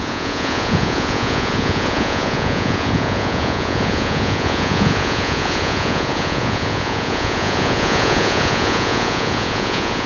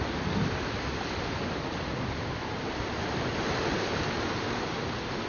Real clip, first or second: second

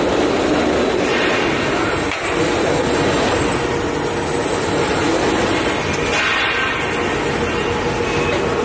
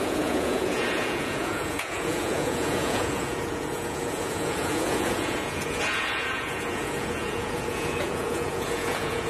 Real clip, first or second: first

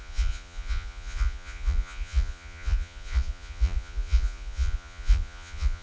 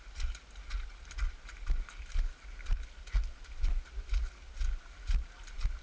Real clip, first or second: second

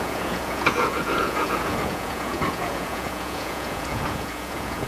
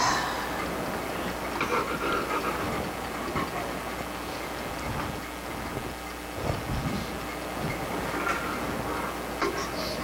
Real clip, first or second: second